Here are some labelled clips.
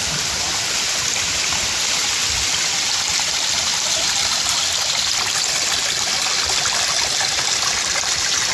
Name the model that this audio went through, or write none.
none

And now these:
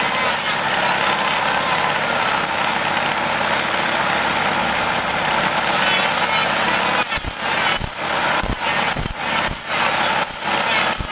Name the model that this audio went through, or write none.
none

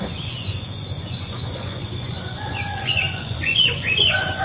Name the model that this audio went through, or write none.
vocoder, Vocos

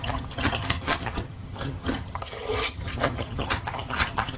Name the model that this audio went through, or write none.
vocoder, HiFi-GAN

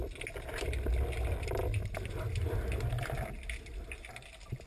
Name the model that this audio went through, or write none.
none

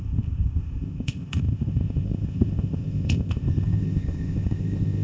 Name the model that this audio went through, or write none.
codec, ZipCodec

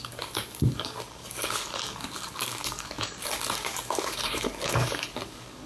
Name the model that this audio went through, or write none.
codec, DAC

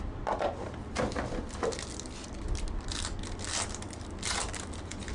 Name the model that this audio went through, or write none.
none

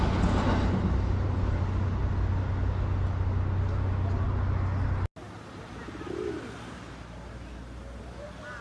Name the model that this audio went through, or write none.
none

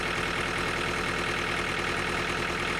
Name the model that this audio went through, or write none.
none